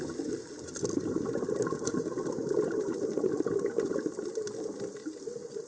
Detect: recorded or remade recorded